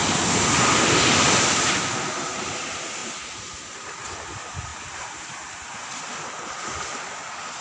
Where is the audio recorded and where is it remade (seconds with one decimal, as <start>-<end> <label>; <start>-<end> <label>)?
0.0-7.6 recorded